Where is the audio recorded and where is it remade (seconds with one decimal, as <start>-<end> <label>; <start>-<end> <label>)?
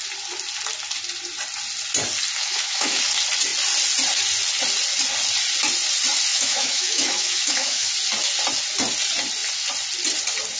0.0-2.4 recorded; 2.4-3.0 remade; 3.0-6.3 recorded; 6.3-7.9 remade; 7.9-10.6 recorded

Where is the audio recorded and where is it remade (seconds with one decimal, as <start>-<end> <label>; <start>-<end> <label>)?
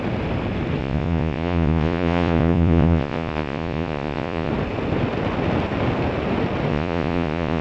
0.0-0.8 recorded; 0.8-4.5 remade; 4.5-6.7 recorded; 6.7-7.6 remade